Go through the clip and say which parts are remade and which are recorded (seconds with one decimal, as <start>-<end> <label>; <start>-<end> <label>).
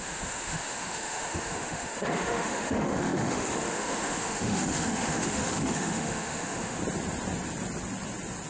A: 0.0-6.8 remade; 6.8-8.5 recorded